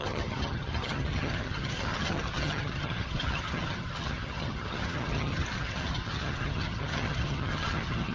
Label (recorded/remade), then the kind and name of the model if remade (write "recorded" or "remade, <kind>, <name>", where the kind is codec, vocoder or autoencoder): remade, vocoder, HiFi-GAN